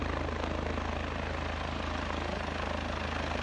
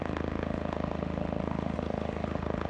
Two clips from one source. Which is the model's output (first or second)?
second